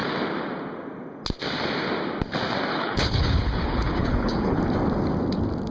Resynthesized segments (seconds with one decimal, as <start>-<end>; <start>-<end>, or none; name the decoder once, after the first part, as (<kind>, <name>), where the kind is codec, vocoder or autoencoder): 2.7-4.6 (codec, HILCodec)